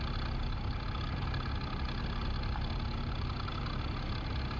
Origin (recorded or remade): recorded